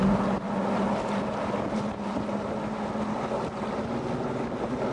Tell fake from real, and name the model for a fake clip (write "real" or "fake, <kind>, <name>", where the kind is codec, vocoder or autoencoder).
real